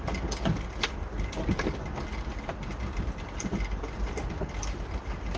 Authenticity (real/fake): real